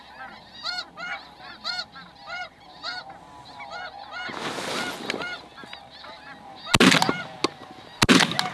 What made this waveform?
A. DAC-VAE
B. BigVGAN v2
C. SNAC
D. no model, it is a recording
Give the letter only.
D